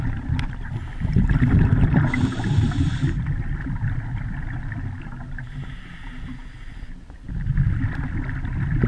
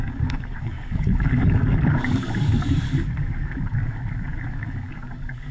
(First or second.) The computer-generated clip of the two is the second